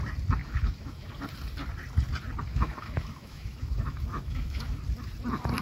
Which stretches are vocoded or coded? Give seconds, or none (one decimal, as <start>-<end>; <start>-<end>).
0.4-1.1; 2.5-4.8

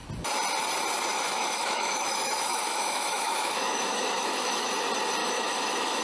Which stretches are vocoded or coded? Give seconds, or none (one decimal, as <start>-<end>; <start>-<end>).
1.1-4.7; 5.2-6.0

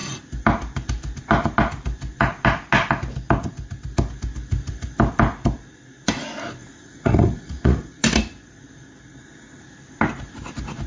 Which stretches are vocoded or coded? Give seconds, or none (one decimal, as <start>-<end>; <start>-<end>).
6.6-7.9

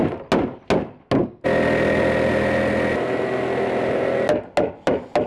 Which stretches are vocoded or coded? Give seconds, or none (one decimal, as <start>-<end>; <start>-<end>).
none

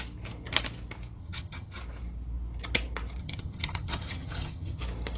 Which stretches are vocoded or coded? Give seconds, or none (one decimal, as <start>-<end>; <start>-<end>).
1.2-1.8; 3.2-4.8

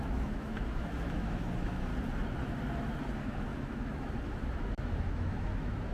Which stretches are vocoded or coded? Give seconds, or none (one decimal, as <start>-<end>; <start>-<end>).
0.0-1.9; 3.0-5.9

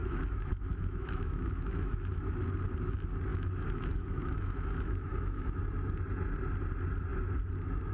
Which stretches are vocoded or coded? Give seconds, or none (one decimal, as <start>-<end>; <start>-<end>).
0.0-2.2; 3.3-5.6